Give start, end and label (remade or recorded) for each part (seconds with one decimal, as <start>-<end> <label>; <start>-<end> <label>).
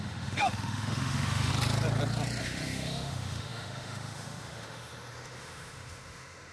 0.0-1.5 remade; 1.5-2.4 recorded; 2.4-6.5 remade